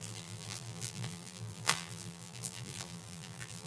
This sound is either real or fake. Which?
fake